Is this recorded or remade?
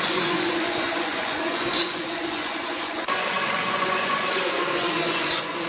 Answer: remade